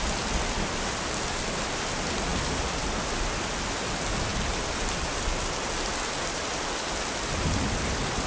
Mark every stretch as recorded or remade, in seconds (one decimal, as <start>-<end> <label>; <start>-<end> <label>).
0.0-4.3 recorded; 4.3-5.3 remade; 5.3-8.3 recorded